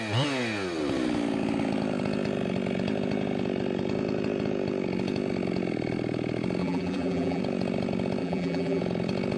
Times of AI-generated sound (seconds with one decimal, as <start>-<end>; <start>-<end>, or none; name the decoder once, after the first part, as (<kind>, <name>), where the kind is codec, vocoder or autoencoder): 6.6-7.4 (vocoder, BigVGAN v2); 8.2-8.8